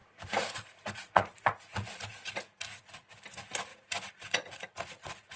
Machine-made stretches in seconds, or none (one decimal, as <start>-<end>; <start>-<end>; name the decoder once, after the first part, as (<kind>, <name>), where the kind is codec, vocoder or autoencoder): 0.0-3.2 (vocoder, Vocos); 3.7-5.4

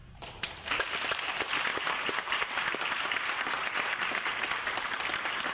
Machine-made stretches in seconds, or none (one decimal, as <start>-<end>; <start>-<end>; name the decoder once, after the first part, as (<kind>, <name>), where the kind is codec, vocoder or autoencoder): 0.0-1.2 (vocoder, BigVGAN v2); 1.7-5.0